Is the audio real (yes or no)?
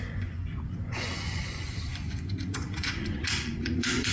no